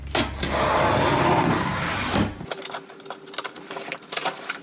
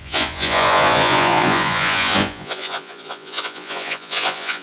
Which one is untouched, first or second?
first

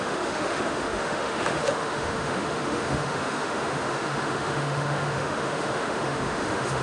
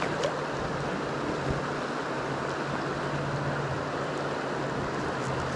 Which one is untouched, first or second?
second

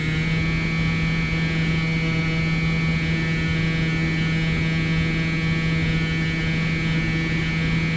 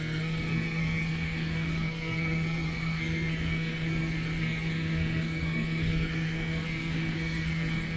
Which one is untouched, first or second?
first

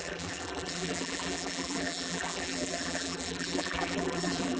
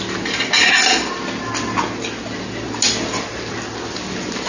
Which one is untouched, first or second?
second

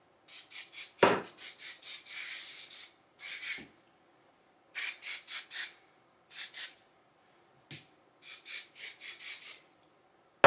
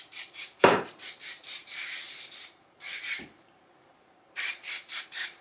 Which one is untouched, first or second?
first